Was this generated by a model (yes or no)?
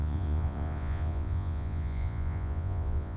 yes